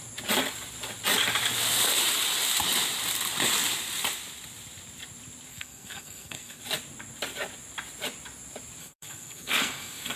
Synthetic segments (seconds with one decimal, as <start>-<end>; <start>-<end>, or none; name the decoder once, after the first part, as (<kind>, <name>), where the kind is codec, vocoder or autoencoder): 5.5-6.6 (codec, SNAC); 8.8-10.2